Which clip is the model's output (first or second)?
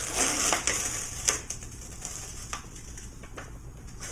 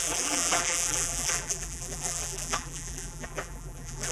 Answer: second